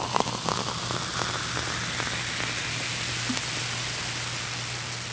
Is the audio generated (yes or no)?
no